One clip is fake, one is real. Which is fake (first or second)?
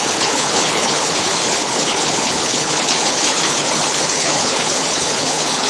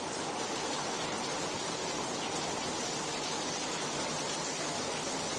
first